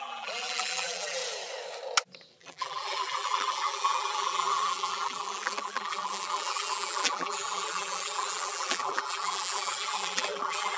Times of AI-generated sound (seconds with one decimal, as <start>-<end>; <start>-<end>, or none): 0.0-1.2; 2.4-10.8

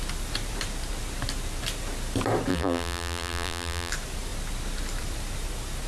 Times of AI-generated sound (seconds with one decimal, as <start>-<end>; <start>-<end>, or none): 2.5-3.9